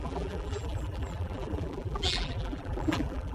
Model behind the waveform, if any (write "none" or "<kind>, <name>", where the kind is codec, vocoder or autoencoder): vocoder, BigVGAN v2